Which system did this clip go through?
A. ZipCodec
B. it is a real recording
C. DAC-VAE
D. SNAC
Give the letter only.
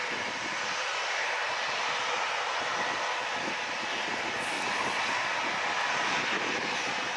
B